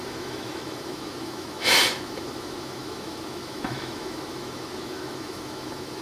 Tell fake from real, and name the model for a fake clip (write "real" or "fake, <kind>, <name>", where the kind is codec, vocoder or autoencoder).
fake, autoencoder, DAC-VAE